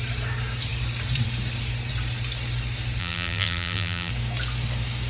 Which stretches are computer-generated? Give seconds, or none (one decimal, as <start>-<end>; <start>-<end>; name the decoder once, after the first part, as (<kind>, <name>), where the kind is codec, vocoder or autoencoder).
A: 3.0-4.1 (vocoder, BigVGAN v2)